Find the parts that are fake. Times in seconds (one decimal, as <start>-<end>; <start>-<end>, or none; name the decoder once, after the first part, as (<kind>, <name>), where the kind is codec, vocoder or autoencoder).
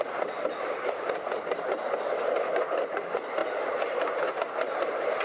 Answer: none